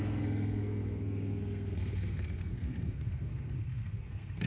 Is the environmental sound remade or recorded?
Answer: remade